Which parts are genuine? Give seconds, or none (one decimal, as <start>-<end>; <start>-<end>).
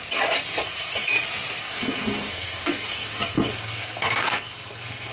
0.0-0.6; 1.1-1.6